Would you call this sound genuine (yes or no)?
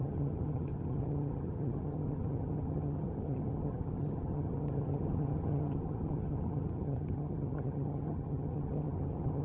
no